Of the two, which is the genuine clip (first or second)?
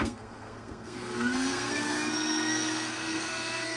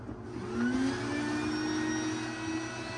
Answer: second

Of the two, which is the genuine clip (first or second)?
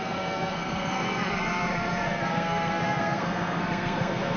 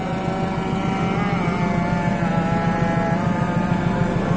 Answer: second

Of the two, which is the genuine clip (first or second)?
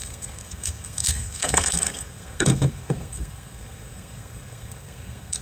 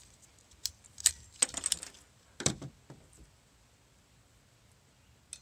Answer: second